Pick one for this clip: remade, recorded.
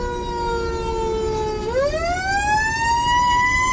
recorded